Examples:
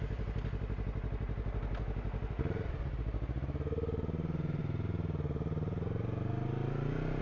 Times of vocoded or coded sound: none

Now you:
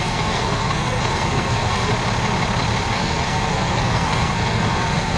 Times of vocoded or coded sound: 0.0-1.9 (codec, SNAC); 2.9-5.2

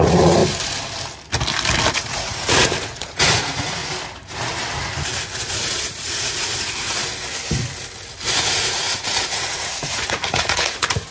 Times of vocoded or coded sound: 0.0-0.4 (vocoder, Vocos); 1.9-3.8; 5.4-7.0; 8.5-11.1

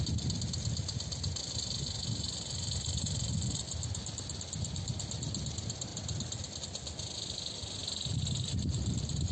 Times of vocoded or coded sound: none

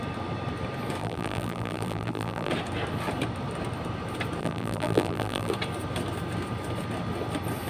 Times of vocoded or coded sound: 1.0-2.5 (vocoder, BigVGAN v2); 4.4-5.5

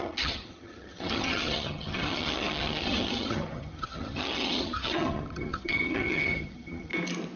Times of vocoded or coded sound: 0.0-6.9 (vocoder, HiFi-GAN)

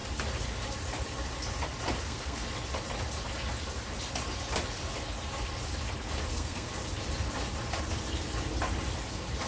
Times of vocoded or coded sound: 2.0-2.4 (codec, SNAC); 6.3-6.7